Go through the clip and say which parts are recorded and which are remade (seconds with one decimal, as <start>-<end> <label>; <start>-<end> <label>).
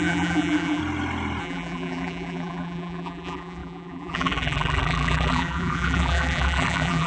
0.0-0.8 remade; 0.8-1.4 recorded; 1.4-7.1 remade